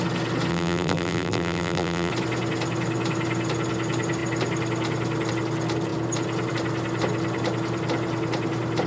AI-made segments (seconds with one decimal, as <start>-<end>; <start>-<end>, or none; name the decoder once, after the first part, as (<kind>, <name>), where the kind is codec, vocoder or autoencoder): 0.5-2.1 (vocoder, BigVGAN v2)